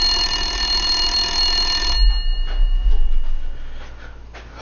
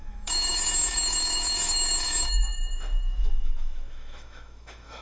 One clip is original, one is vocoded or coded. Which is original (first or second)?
first